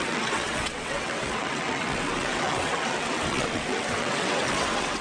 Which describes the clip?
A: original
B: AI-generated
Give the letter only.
B